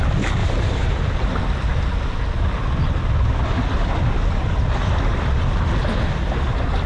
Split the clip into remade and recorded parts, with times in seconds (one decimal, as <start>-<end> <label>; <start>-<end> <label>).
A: 0.0-0.4 recorded; 0.4-1.4 remade; 1.4-6.9 recorded